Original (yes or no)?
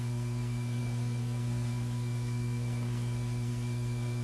no